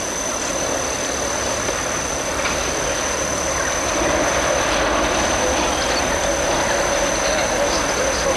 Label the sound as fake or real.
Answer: real